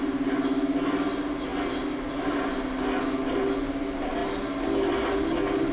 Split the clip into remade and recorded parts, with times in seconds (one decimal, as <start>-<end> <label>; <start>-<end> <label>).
0.0-5.7 recorded